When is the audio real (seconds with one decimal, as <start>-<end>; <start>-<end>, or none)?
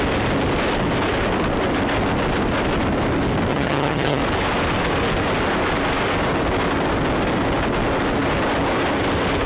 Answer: 0.0-3.5; 4.2-9.5